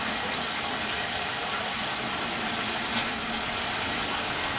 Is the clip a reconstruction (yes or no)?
no